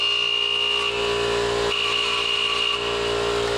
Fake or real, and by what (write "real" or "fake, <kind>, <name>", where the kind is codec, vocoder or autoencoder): real